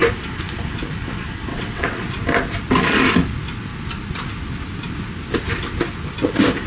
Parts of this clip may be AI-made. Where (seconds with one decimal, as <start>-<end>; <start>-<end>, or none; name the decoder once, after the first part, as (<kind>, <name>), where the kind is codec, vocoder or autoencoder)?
1.5-2.0 (vocoder, WaveNeXt)